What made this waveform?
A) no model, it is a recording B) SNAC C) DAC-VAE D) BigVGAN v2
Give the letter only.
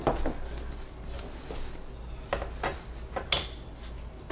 A